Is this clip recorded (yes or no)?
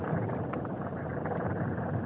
no